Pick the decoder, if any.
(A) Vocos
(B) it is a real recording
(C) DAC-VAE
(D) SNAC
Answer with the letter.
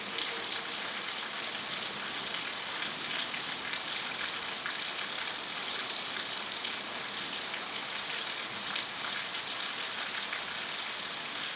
B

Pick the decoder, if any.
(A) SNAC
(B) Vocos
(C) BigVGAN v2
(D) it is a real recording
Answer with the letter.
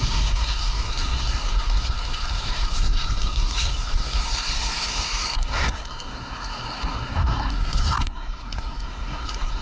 A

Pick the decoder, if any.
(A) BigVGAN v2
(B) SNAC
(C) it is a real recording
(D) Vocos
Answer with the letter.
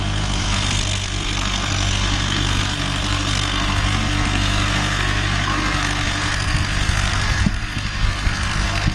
B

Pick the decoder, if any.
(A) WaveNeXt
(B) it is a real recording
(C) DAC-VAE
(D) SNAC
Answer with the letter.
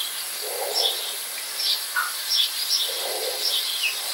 B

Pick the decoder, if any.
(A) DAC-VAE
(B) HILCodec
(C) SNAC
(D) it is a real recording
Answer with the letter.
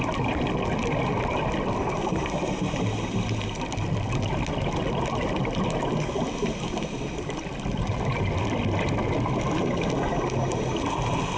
D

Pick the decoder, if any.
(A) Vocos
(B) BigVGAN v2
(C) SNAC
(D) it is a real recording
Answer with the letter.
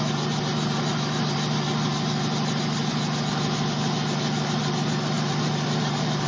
D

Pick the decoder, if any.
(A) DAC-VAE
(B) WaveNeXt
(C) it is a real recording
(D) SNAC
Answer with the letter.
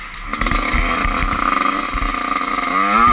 C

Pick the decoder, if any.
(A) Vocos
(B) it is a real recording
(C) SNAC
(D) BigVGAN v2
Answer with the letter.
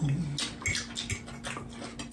B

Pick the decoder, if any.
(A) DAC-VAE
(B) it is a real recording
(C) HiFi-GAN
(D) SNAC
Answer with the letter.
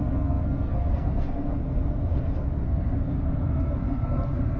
D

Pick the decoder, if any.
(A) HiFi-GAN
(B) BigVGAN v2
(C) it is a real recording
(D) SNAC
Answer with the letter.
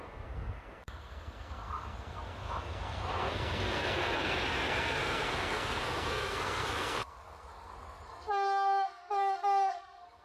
D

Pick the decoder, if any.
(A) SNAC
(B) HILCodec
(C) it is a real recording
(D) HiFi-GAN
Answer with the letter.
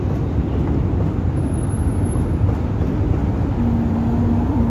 C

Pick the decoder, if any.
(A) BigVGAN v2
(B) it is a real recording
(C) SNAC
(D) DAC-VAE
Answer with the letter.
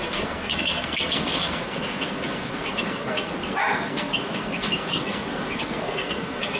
C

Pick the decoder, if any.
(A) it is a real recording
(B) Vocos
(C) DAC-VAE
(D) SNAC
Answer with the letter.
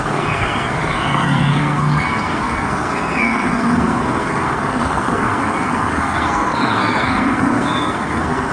D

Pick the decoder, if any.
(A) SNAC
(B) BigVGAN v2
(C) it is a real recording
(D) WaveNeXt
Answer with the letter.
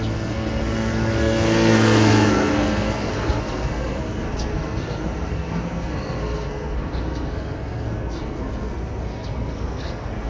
A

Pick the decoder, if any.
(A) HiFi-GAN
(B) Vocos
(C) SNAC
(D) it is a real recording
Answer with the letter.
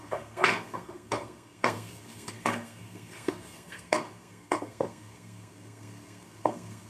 C